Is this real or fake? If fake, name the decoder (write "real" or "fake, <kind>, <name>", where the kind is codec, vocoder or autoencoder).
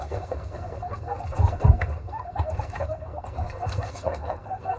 fake, codec, SNAC